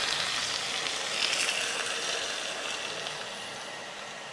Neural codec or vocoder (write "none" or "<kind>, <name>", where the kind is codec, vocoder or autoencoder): none